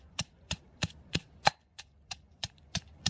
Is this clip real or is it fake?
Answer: fake